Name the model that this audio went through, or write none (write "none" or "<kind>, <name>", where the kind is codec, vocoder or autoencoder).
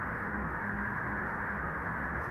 autoencoder, DAC-VAE